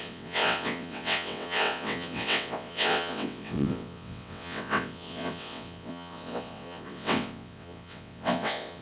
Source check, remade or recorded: remade